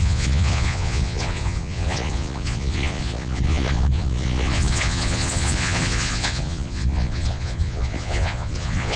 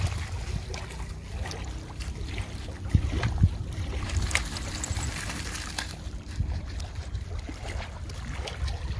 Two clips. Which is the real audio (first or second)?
second